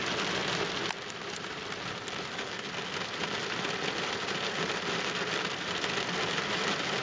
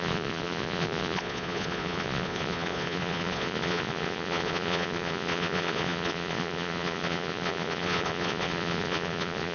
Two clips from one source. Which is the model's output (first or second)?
second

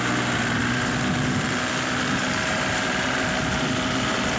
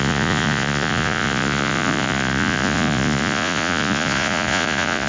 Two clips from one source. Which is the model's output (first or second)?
second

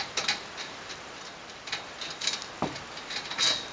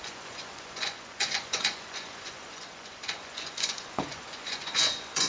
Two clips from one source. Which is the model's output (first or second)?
second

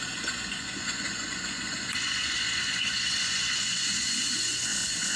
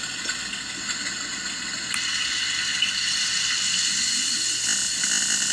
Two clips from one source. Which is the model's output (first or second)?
first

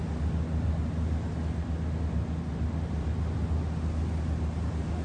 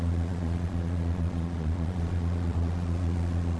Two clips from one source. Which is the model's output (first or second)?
second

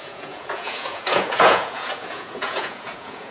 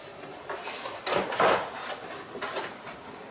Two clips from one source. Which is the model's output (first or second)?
first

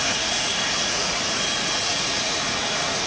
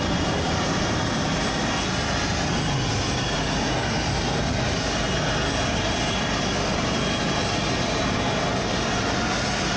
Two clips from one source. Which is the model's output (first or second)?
first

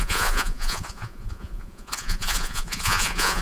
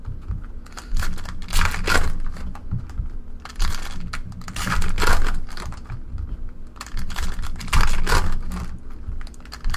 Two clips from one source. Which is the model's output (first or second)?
first